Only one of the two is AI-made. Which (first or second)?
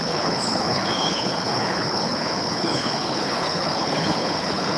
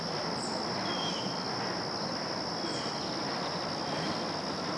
first